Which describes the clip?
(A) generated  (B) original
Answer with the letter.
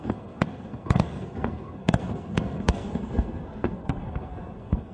A